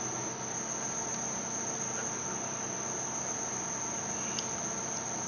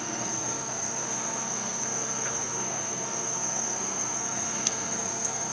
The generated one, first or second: second